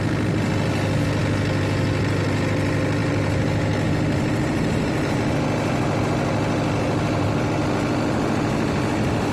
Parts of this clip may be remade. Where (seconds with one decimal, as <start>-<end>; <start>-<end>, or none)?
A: none